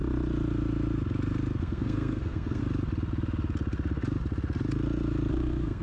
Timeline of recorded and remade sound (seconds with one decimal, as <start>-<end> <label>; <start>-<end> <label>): 0.0-1.6 recorded; 1.6-2.6 remade; 2.6-5.3 recorded; 5.3-5.8 remade